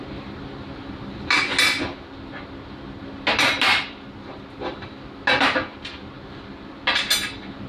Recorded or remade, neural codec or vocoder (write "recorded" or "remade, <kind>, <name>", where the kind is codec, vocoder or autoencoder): recorded